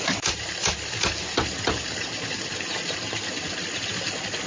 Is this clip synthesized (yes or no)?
no